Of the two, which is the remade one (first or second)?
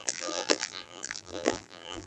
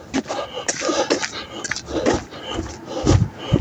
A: first